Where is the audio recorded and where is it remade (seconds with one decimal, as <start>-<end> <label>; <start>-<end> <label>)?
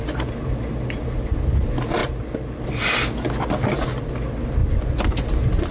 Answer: 0.0-5.7 recorded